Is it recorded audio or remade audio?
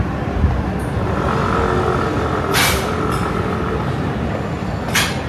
recorded